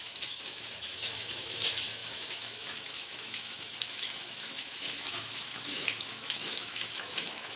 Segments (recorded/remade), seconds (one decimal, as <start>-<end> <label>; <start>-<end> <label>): 0.0-7.6 remade